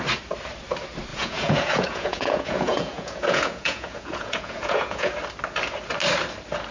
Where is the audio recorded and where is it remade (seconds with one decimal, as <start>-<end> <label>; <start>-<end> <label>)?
0.0-1.1 recorded; 1.1-5.1 remade; 5.1-6.7 recorded